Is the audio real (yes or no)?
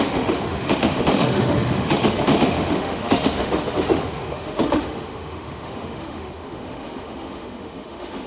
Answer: no